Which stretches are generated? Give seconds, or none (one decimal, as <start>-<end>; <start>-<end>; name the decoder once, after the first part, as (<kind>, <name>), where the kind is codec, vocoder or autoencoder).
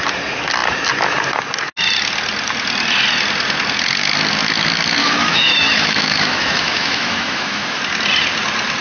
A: 5.0-7.8 (autoencoder, DAC-VAE)